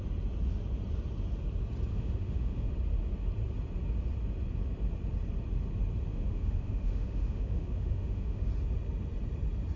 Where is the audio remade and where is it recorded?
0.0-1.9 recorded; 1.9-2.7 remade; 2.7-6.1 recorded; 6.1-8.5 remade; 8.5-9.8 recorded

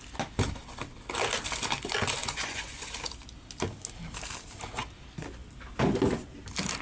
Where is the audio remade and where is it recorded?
0.0-2.2 recorded; 2.2-2.9 remade; 2.9-6.8 recorded

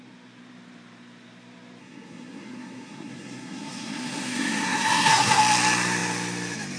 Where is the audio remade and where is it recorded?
0.0-1.8 recorded; 1.8-5.4 remade; 5.4-6.8 recorded

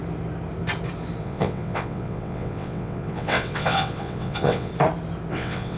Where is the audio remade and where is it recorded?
0.0-1.2 recorded; 1.2-4.7 remade; 4.7-5.3 recorded; 5.3-5.8 remade

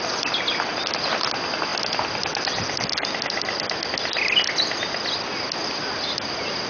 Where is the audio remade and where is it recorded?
0.0-6.7 recorded